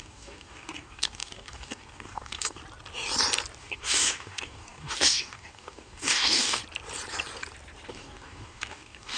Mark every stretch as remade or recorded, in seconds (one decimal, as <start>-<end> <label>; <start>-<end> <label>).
0.0-2.6 remade; 2.6-3.6 recorded; 3.6-6.6 remade; 6.6-7.9 recorded; 7.9-9.2 remade